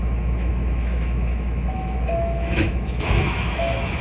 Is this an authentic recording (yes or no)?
no